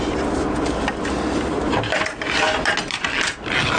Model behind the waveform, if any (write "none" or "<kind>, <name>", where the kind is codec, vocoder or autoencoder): none